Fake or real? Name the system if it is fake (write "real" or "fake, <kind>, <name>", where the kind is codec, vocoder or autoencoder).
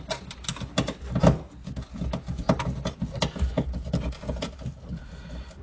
real